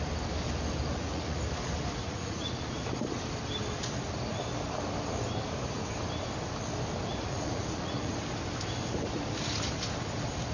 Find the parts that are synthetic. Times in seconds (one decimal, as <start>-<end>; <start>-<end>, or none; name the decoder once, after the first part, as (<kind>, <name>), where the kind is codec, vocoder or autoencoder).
0.9-1.4 (vocoder, Vocos); 2.0-2.9; 7.1-8.1